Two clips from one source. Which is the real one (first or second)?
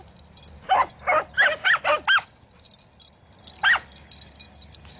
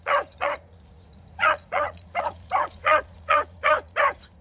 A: first